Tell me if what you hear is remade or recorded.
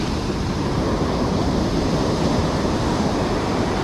recorded